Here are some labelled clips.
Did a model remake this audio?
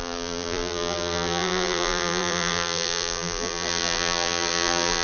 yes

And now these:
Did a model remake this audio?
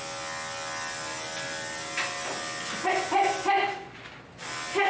no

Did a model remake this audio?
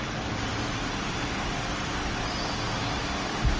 no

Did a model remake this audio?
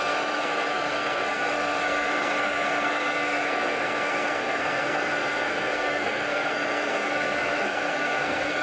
yes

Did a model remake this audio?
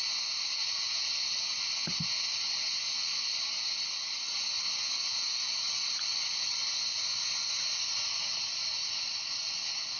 no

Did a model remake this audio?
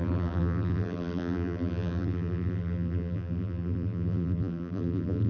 yes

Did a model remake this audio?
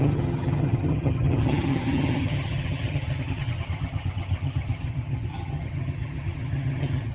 yes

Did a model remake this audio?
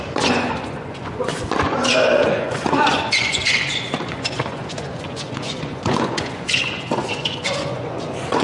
yes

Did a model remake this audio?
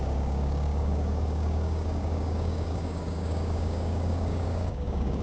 yes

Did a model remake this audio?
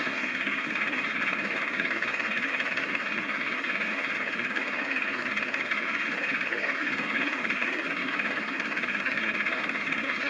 yes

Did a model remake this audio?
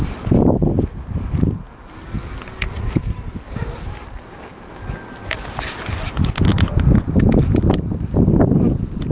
no